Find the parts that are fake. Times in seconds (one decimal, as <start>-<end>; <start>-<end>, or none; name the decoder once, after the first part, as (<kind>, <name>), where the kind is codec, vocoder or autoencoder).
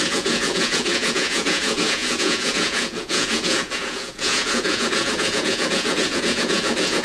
0.0-7.0 (vocoder, Vocos)